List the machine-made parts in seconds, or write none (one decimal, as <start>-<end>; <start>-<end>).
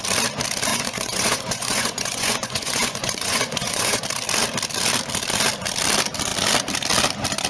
0.7-4.0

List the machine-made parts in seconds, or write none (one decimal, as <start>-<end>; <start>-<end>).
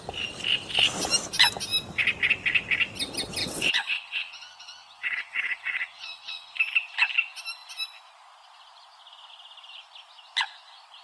3.4-6.6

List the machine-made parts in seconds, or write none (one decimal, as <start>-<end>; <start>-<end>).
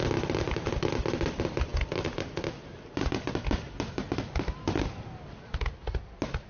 none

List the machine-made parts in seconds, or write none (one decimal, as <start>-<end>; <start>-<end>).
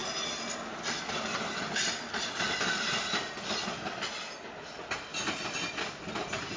none